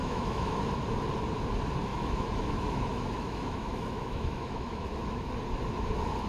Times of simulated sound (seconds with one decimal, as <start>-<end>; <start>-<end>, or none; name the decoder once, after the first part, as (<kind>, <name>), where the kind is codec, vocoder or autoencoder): 0.0-0.6 (autoencoder, DAC-VAE); 1.9-5.3